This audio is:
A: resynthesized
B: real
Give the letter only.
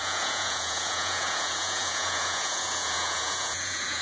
A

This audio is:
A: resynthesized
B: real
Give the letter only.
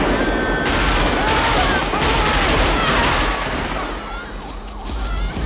B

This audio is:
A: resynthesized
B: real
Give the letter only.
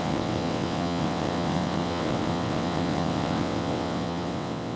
A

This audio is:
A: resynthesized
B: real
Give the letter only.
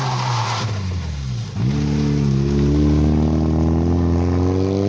B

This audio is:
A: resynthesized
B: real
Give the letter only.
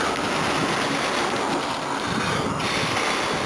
B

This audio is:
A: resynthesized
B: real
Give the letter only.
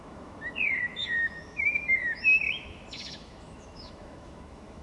A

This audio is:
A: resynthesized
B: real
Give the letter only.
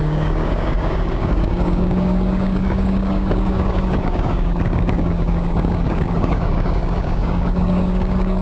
A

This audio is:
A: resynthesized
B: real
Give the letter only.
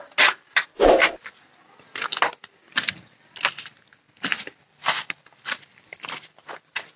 B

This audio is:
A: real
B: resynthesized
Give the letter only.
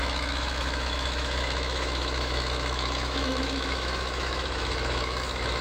B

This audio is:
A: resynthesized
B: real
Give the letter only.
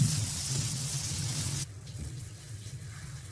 A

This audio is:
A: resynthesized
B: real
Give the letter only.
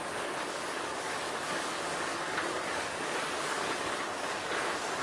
A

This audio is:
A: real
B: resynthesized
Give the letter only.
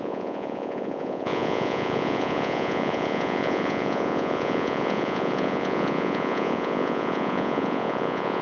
B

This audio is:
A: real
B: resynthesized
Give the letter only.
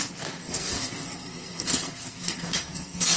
B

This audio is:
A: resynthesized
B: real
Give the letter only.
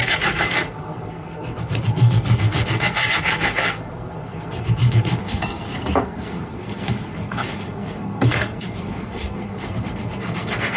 A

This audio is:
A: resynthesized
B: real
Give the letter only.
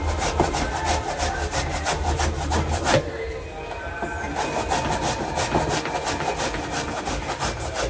B